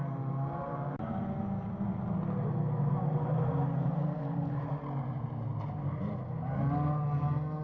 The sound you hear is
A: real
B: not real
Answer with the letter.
A